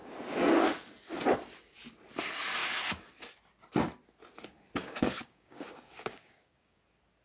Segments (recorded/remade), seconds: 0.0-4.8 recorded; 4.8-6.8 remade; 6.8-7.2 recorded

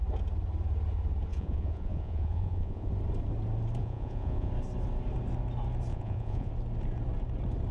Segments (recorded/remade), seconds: 0.0-1.3 recorded; 1.3-2.9 remade; 2.9-3.8 recorded; 3.8-4.5 remade; 4.5-5.9 recorded; 5.9-6.5 remade; 6.5-7.7 recorded

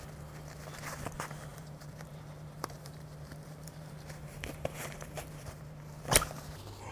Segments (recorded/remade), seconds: 0.0-1.5 recorded; 1.5-5.6 remade; 5.6-6.9 recorded

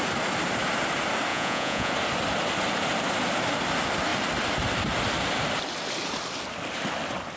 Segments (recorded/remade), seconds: 0.0-1.3 recorded; 1.3-1.9 remade; 1.9-7.4 recorded

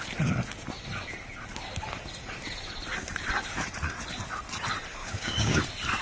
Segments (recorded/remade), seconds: 0.0-5.0 recorded; 5.0-5.6 remade; 5.6-6.0 recorded

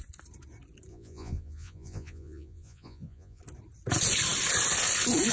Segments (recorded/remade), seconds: 0.0-0.9 recorded; 0.9-3.4 remade; 3.4-5.3 recorded

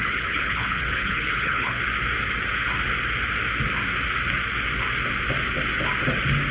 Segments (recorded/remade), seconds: 0.0-1.8 remade; 1.8-6.5 recorded

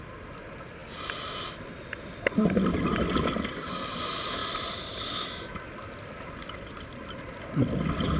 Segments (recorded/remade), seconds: 0.0-8.2 recorded